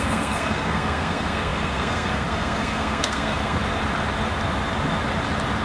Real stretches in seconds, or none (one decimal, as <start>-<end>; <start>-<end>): 3.6-5.6